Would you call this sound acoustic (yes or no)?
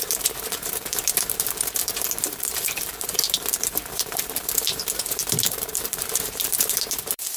no